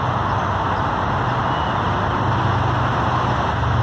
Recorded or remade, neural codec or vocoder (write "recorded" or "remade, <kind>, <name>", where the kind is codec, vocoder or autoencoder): recorded